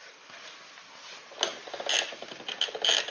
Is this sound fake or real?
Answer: real